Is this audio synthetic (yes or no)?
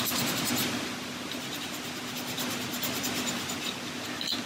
no